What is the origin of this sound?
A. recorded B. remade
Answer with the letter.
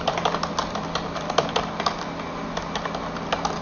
A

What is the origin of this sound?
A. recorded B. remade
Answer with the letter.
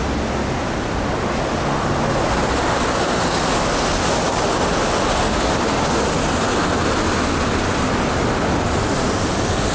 A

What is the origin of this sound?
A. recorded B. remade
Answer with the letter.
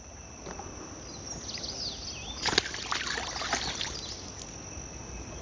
A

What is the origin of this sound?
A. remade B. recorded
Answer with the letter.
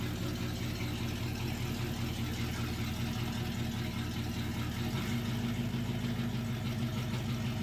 B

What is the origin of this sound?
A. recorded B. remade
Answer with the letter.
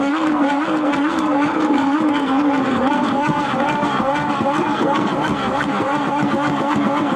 B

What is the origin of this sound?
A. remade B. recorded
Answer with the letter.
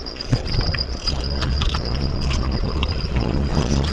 A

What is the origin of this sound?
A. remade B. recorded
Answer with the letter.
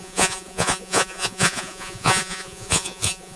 A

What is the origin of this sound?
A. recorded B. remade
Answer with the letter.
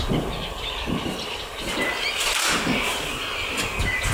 A